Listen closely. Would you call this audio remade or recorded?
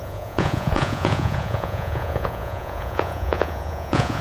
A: remade